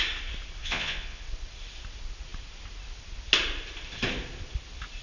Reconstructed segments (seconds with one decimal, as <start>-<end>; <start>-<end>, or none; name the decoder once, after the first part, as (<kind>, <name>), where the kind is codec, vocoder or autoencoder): 0.6-1.2 (vocoder, Vocos)